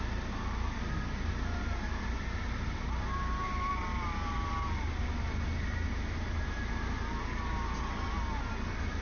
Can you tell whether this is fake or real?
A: real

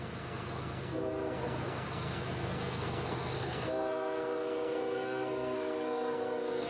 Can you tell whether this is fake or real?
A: fake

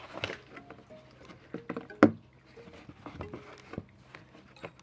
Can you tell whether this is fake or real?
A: real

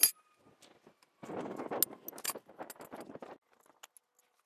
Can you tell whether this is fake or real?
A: real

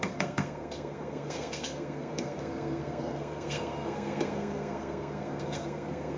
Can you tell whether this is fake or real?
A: fake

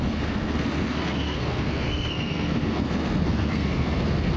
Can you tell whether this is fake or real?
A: fake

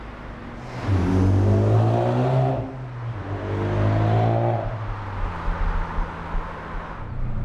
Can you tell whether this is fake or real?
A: real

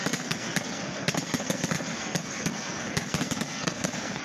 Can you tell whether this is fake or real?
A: fake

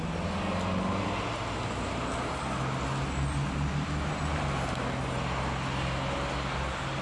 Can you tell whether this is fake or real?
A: real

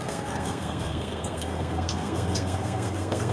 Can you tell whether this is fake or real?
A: fake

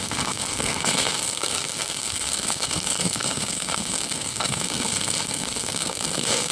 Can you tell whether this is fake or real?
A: fake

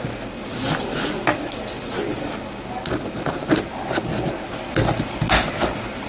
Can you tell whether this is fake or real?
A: real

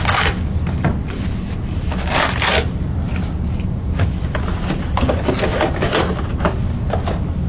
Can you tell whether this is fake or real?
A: real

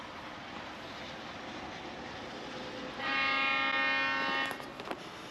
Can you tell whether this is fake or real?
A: real